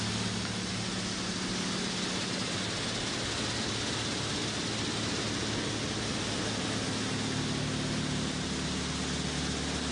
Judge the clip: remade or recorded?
recorded